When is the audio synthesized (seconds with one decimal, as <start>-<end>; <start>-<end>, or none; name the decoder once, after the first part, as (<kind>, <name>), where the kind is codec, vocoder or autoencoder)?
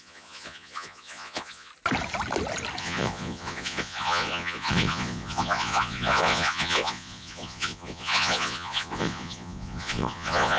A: 0.0-1.7 (vocoder, Vocos); 2.8-10.6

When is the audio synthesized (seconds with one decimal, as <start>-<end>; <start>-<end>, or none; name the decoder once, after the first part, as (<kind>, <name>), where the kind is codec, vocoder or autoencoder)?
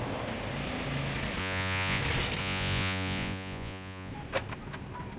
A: 1.4-2.0 (vocoder, Vocos); 2.4-4.1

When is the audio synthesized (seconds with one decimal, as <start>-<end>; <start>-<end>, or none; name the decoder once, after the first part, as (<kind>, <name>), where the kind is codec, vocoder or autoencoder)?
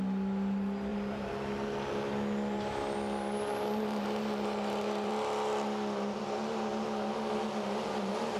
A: 0.9-5.1 (vocoder, BigVGAN v2)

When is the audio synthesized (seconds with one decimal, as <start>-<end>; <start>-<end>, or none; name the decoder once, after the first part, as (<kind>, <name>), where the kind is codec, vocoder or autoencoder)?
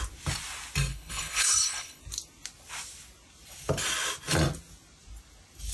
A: 0.9-2.0 (codec, HILCodec)